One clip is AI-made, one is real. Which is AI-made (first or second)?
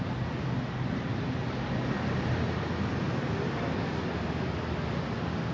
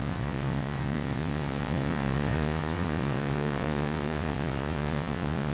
second